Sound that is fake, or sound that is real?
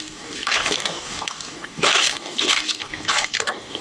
fake